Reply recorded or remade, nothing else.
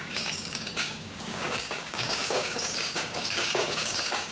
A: remade